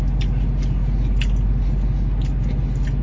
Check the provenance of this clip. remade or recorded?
recorded